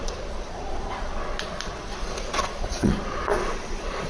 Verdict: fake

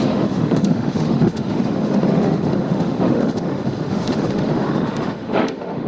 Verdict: fake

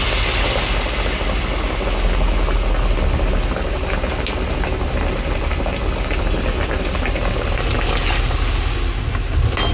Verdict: real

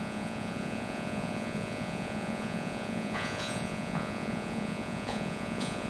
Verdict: fake